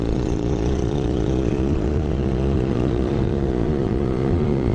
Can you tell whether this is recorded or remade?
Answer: remade